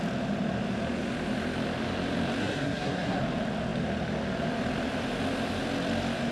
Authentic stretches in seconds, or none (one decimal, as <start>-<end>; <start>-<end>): 0.0-2.4; 3.2-6.3

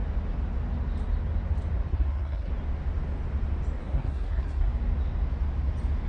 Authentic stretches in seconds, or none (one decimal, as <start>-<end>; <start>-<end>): 0.0-1.9; 2.5-3.8; 4.7-6.1

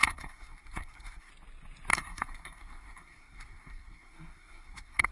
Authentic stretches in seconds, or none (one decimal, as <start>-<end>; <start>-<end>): 1.3-1.9

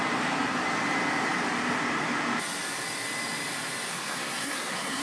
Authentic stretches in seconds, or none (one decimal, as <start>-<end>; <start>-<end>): 0.0-3.9

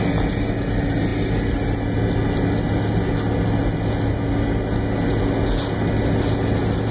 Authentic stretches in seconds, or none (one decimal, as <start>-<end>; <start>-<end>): 0.0-6.9